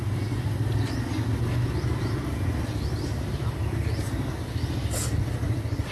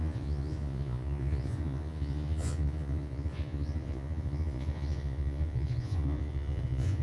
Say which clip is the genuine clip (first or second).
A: first